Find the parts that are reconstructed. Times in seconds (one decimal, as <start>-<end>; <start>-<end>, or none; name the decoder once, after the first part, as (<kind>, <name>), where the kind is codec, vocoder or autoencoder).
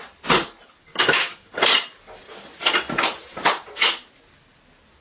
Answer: 0.9-1.5 (codec, DAC)